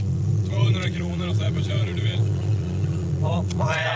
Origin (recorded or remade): remade